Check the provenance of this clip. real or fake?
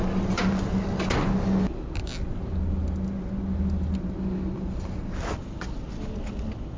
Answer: real